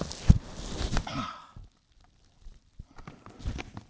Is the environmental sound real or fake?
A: real